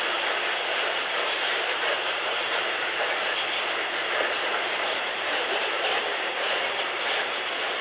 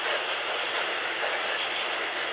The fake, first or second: first